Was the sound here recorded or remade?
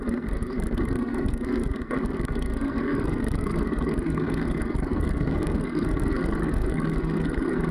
remade